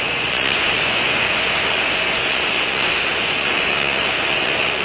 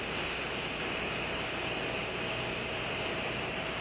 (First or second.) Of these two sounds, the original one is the second